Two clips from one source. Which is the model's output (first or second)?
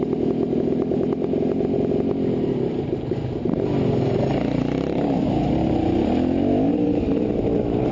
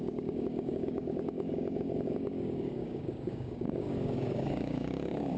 second